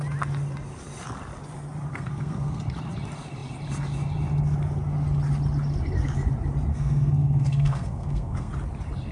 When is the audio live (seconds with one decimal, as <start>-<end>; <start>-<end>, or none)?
0.0-1.9; 2.6-6.7; 8.5-9.1